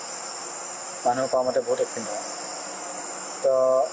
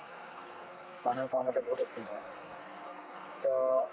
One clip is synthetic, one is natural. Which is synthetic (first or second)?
second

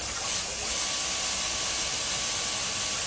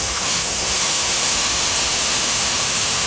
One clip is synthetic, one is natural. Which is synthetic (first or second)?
second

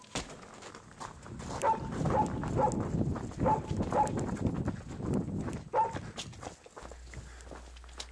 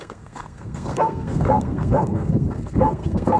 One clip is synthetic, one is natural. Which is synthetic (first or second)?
second